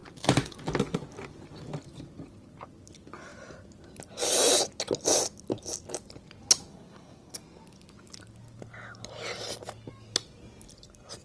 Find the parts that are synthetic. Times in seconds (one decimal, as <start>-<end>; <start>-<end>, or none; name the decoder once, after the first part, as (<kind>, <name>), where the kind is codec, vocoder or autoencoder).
6.7-7.4 (codec, SNAC)